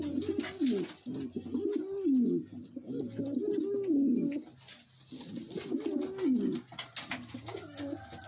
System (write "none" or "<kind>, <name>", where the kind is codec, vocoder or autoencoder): none